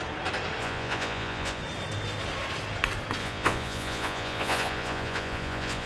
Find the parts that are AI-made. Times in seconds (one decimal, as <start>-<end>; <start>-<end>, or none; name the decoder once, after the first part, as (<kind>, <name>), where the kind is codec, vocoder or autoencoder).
0.6-1.6 (vocoder, Vocos); 3.2-5.9